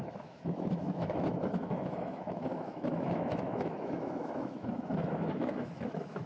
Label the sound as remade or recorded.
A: remade